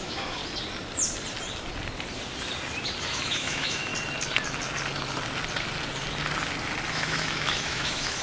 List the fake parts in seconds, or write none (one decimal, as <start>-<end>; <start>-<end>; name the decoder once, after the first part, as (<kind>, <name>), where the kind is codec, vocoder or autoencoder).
0.0-0.4 (autoencoder, DAC-VAE); 3.0-3.9; 6.9-8.2